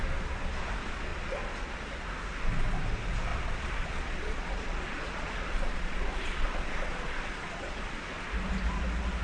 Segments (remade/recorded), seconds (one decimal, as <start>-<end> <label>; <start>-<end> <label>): 0.0-1.1 recorded; 1.1-1.7 remade; 1.7-3.3 recorded; 3.3-8.0 remade; 8.0-9.2 recorded